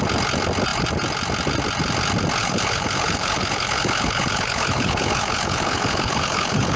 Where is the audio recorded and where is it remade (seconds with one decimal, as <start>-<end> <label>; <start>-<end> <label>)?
0.0-2.4 recorded; 2.4-6.8 remade